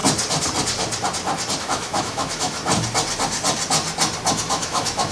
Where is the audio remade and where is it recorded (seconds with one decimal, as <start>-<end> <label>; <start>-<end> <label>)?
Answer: 0.0-1.6 recorded; 1.6-2.6 remade; 2.6-4.5 recorded; 4.5-5.1 remade